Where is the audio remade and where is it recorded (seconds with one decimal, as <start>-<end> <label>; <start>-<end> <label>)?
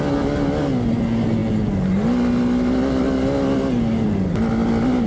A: 0.0-5.1 recorded